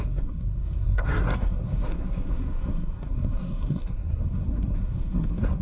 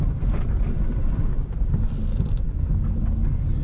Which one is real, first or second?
second